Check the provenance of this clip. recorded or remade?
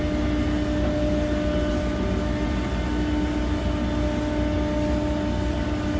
recorded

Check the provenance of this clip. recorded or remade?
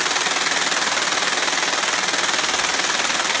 recorded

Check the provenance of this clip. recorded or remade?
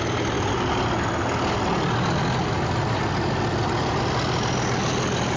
recorded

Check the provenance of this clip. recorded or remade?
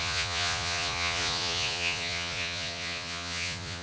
remade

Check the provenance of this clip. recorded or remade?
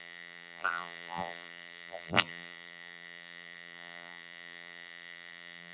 remade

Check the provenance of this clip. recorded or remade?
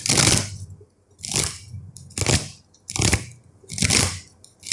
recorded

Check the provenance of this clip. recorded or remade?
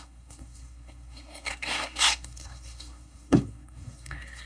remade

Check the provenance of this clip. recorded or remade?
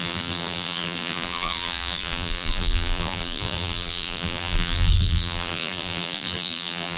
remade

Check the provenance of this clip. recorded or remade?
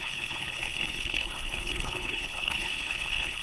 remade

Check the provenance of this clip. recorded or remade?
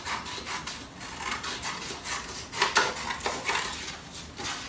recorded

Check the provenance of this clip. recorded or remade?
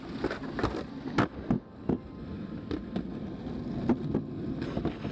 recorded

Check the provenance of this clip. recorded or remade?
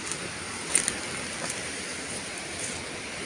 recorded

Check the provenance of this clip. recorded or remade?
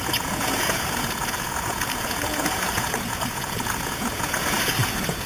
remade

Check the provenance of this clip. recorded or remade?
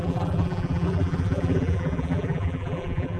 remade